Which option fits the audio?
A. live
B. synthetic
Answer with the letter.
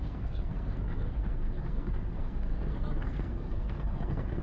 B